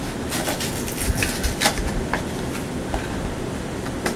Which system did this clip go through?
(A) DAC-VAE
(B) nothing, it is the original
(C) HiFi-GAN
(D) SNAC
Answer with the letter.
B